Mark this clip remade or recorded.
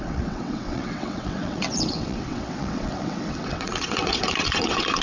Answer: remade